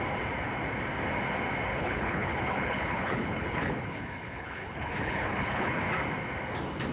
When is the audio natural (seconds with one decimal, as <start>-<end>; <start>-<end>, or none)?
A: 0.0-1.7; 5.8-6.9

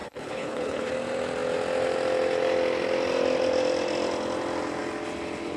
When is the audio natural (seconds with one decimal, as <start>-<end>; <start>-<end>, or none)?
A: 0.9-5.6